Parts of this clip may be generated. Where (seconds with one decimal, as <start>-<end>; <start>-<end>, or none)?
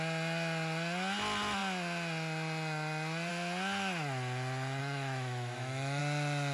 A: 4.8-6.0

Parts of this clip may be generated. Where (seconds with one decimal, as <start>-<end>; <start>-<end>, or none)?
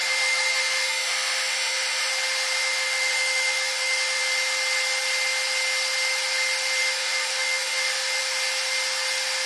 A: 0.0-2.1; 2.6-4.2; 6.8-8.2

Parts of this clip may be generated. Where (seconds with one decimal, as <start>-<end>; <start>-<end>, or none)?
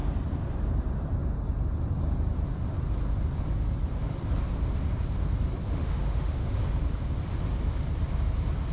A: 5.7-6.6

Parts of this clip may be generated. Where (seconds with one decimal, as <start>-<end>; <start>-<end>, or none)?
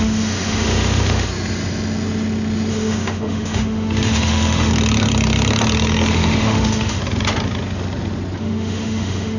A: 0.0-1.3; 2.7-4.7; 6.1-7.0; 8.4-9.4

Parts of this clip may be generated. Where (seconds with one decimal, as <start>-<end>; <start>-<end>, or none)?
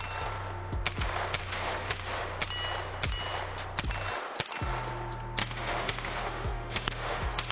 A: 1.4-2.2; 5.4-7.5